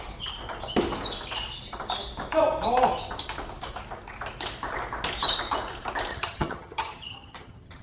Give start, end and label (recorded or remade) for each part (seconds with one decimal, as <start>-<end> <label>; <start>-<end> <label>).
0.0-6.1 recorded; 6.1-7.8 remade